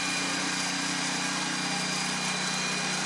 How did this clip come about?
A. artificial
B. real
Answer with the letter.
B